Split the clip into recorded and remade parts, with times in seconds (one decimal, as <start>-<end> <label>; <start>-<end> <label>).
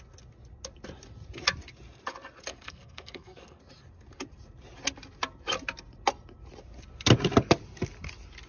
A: 0.0-2.5 recorded; 2.5-3.6 remade; 3.6-8.5 recorded